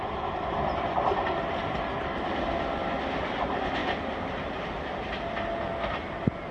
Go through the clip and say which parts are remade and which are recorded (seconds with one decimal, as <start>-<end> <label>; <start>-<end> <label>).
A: 0.0-6.5 recorded